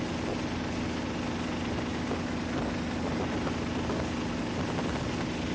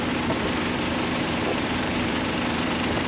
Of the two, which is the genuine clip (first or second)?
first